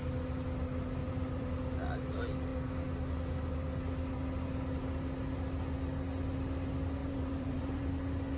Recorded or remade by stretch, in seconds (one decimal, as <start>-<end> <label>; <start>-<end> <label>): 0.0-1.0 recorded; 1.0-1.5 remade; 1.5-7.0 recorded; 7.0-7.9 remade; 7.9-8.4 recorded